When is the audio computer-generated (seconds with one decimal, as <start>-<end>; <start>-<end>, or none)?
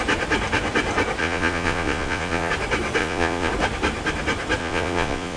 1.2-2.5; 3.0-3.5; 4.6-5.4